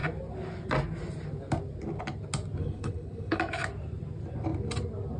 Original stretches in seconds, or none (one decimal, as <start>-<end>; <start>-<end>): 0.0-2.6; 3.4-5.2